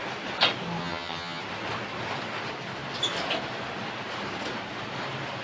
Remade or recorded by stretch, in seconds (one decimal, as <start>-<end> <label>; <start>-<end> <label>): 0.0-0.8 recorded; 0.8-1.4 remade; 1.4-5.4 recorded